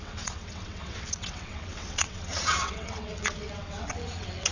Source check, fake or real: fake